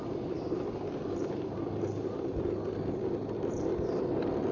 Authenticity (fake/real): real